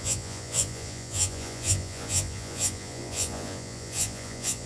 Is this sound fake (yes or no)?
yes